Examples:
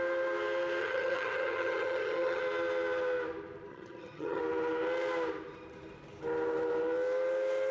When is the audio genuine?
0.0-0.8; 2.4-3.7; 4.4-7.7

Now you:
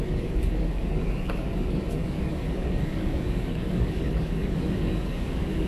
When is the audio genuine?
none

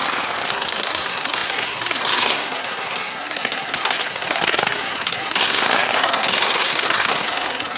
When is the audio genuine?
0.0-0.5

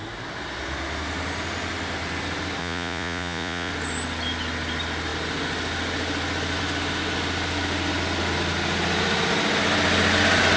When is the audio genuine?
0.0-2.6; 3.7-10.6